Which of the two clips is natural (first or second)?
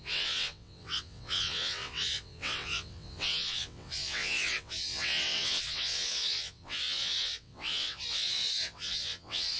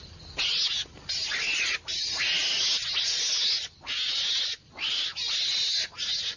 second